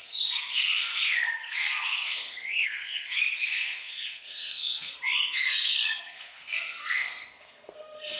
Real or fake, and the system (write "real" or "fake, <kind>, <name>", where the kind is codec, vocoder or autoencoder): fake, codec, SNAC